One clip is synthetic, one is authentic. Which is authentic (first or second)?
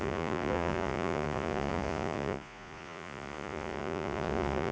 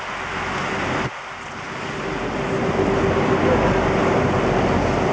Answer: second